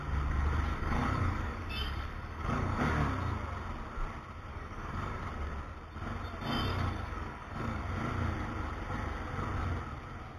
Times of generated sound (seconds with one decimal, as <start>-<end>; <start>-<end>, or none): 0.7-2.8; 4.5-5.2; 6.7-7.8

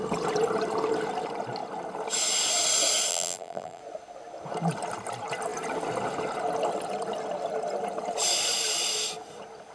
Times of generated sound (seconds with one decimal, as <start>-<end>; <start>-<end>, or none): 3.1-3.8

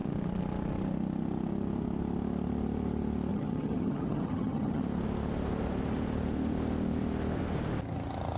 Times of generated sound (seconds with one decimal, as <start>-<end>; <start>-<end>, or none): 3.3-4.8